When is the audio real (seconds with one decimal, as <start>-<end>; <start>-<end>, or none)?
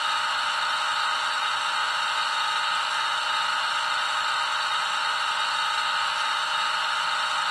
0.0-3.5; 5.3-7.5